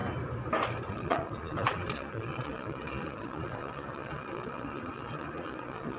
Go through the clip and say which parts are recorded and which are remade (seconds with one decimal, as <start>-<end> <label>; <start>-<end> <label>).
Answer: 0.0-0.9 recorded; 0.9-6.0 remade